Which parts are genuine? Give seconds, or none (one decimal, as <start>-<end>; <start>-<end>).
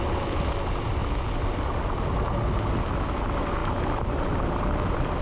0.0-5.2